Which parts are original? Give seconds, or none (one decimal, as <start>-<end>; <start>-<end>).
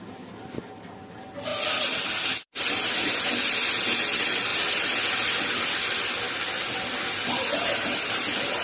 0.0-8.6